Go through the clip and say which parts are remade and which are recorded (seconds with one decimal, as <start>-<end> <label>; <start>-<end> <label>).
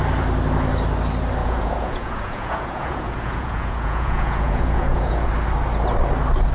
0.0-1.4 recorded; 1.4-5.3 remade; 5.3-6.5 recorded